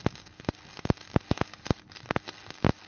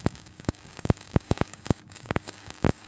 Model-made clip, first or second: second